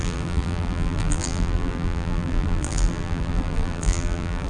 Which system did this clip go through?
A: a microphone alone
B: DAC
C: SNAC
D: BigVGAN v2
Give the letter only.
D